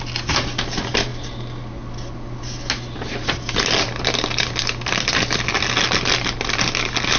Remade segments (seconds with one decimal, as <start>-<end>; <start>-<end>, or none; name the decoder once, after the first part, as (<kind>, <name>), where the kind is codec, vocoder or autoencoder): none